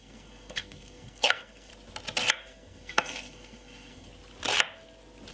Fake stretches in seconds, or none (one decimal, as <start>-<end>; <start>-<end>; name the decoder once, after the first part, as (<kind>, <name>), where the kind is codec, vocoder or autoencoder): 0.0-1.7 (codec, SNAC); 2.3-4.1